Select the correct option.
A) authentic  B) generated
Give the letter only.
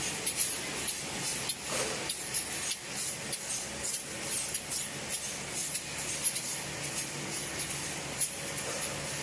A